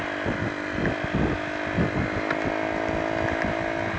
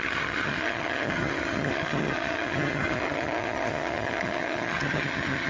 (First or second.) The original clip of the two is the first